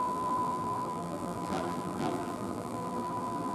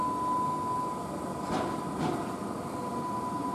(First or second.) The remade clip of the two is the first